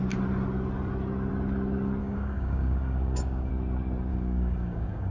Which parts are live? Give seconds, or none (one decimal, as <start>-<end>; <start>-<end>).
0.0-2.0; 3.5-4.1